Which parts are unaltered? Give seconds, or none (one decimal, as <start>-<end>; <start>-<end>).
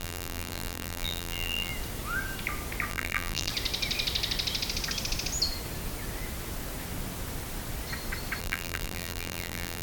1.7-2.9; 3.5-8.4